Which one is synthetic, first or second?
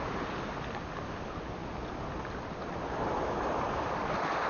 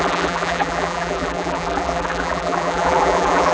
second